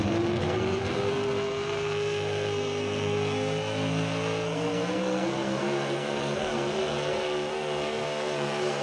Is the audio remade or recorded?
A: remade